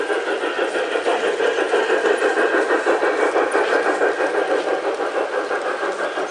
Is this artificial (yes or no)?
no